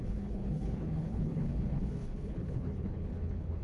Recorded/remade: remade